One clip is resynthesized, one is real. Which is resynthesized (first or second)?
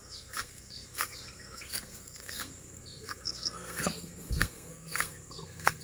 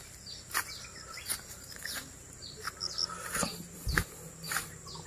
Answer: first